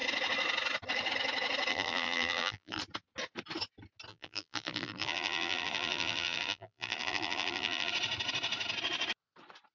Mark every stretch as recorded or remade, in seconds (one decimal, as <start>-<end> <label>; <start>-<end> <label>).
0.0-1.7 recorded; 1.7-2.8 remade; 2.8-4.1 recorded; 4.1-7.9 remade; 7.9-9.7 recorded